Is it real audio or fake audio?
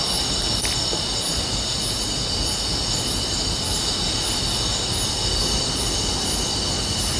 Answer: real